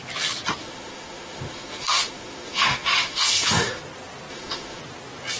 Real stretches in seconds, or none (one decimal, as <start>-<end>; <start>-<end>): 0.0-0.6; 3.8-4.3; 4.8-5.4